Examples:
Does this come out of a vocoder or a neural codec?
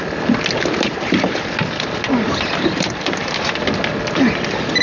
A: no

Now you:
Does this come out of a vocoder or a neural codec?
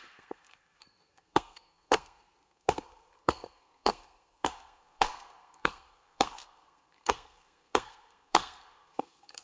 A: yes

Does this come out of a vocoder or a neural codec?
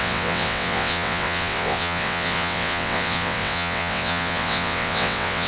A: yes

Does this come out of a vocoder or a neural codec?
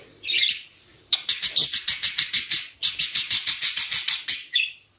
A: yes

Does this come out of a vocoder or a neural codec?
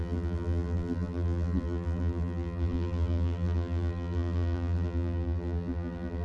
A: yes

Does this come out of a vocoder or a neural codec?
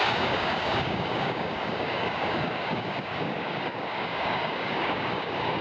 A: yes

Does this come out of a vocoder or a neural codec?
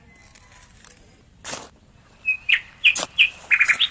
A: no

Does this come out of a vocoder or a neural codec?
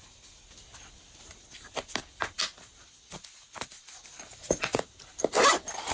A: no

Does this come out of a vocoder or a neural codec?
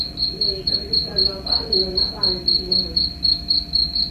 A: no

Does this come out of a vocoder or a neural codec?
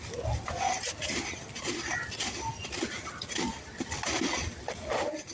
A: no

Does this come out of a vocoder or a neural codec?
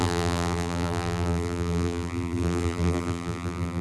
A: yes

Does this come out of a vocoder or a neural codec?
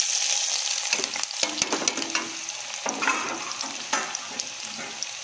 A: no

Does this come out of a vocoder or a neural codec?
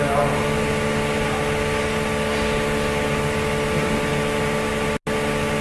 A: no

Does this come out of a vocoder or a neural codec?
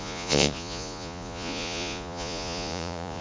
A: yes